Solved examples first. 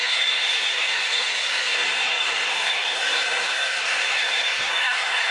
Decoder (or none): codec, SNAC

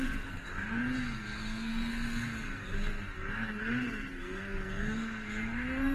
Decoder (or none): codec, SNAC